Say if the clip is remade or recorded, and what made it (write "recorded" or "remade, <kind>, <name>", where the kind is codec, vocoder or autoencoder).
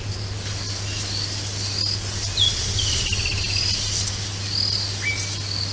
recorded